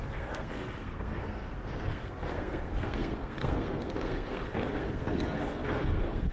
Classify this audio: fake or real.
fake